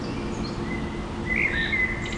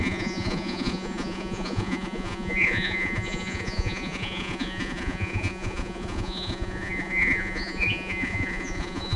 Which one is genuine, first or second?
first